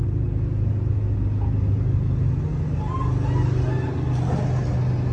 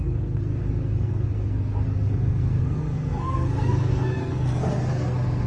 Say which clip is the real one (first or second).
first